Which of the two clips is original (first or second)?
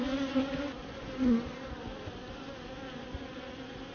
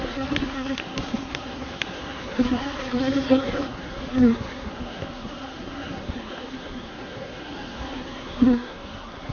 first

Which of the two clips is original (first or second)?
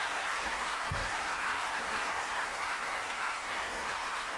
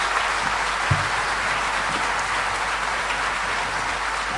second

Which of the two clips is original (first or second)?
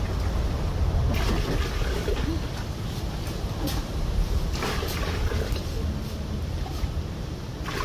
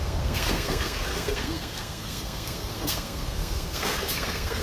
first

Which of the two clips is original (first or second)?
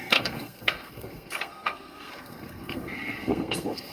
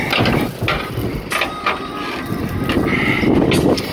second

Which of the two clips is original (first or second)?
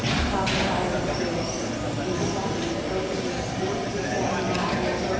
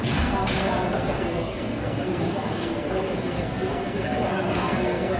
first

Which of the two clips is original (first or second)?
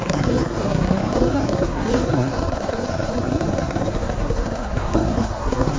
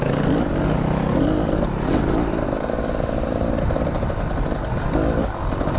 second